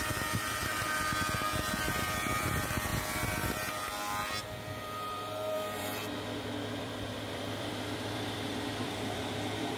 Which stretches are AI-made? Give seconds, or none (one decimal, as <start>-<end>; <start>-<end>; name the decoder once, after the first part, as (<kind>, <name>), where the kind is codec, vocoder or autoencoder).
0.0-0.7 (vocoder, BigVGAN v2); 1.9-2.9; 4.8-5.9; 6.7-9.8